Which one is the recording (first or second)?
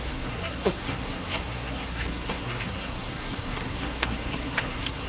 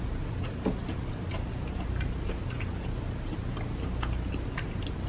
second